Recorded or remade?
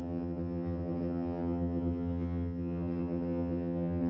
remade